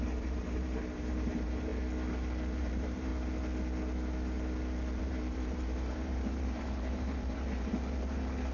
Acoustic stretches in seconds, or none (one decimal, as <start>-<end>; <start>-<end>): 1.7-2.6; 3.1-5.0